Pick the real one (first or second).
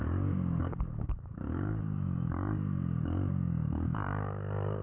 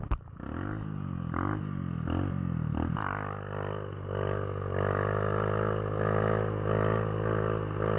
second